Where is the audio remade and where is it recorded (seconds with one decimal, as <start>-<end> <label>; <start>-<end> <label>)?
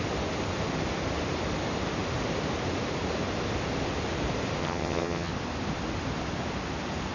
0.0-4.6 recorded; 4.6-5.3 remade; 5.3-7.1 recorded